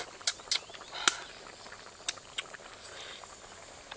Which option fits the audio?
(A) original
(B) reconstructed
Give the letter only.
A